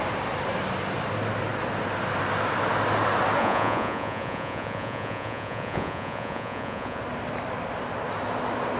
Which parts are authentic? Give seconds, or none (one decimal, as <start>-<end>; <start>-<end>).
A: 0.0-3.4; 7.0-8.8